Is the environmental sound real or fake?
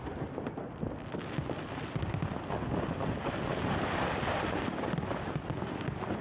real